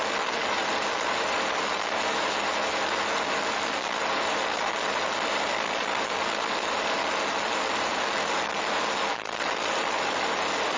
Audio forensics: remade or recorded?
remade